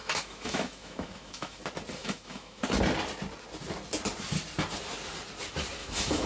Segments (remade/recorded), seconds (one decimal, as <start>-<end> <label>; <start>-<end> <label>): 0.0-1.6 remade; 1.6-2.0 recorded; 2.0-2.6 remade; 2.6-5.8 recorded; 5.8-6.3 remade